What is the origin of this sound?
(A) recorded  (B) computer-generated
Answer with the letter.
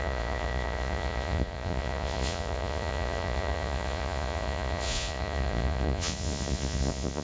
B